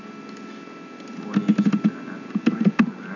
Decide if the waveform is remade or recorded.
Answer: recorded